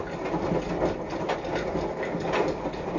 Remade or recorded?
recorded